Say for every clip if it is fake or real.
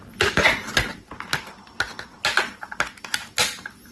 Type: real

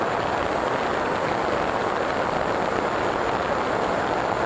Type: real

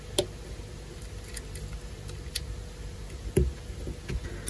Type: real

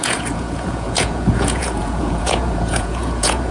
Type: fake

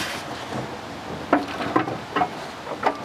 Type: real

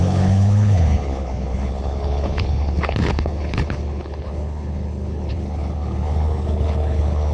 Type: fake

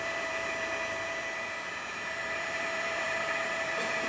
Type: fake